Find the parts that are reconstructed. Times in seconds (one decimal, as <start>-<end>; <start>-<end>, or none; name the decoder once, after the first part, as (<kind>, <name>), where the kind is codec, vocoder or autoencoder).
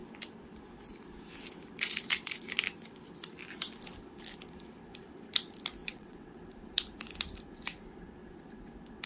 5.8-6.4 (vocoder, WaveNeXt)